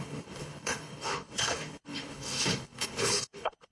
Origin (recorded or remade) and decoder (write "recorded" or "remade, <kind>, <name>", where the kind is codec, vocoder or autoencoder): remade, codec, HILCodec